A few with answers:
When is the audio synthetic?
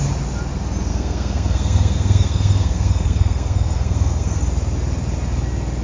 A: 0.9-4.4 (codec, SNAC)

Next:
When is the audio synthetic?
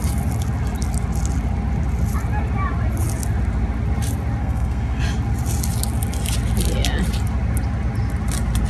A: 4.4-5.0 (codec, SNAC)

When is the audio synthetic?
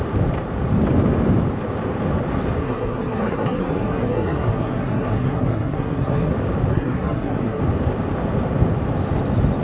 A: 2.6-6.3 (codec, SNAC); 6.7-7.6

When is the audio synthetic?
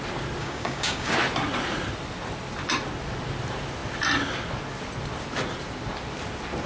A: 0.4-1.1 (codec, DAC)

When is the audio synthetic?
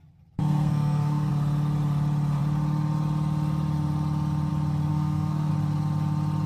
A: 0.4-1.3 (codec, SNAC); 4.9-5.5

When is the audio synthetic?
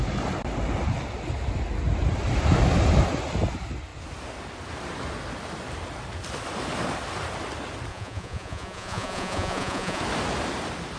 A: 7.9-10.0 (vocoder, Vocos)